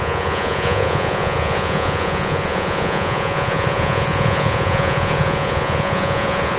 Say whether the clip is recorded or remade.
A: remade